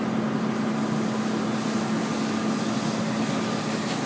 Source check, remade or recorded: recorded